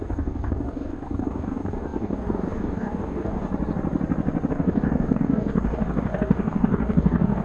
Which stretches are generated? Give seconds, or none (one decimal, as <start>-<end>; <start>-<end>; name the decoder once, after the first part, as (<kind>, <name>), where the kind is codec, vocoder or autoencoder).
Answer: 0.0-3.5 (codec, DAC); 4.5-7.4